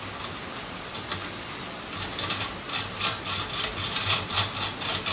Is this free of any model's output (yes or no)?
yes